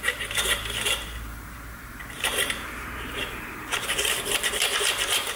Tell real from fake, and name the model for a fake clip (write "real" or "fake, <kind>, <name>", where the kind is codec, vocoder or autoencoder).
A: fake, vocoder, BigVGAN v2